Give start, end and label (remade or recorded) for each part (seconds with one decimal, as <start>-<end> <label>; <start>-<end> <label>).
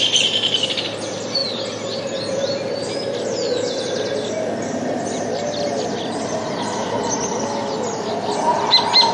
0.0-9.1 recorded